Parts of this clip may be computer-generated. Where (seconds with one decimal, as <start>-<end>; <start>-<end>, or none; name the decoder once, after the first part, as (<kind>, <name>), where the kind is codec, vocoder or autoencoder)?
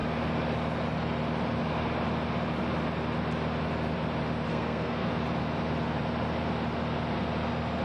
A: 4.5-5.1 (codec, SNAC)